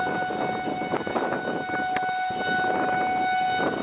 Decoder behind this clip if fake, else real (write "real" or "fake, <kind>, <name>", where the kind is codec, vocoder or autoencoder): real